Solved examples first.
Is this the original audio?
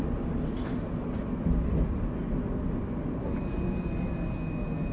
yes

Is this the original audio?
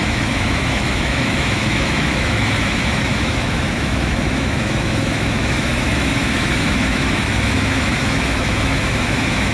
no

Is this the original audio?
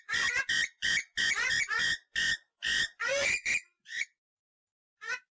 no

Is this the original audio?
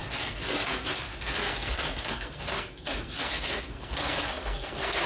no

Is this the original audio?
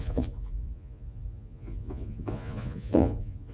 no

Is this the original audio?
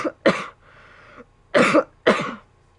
yes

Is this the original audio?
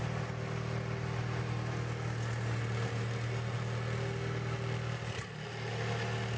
yes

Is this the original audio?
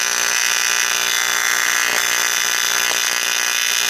yes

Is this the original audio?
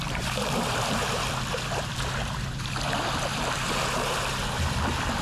no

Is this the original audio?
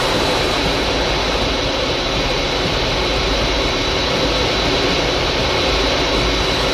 yes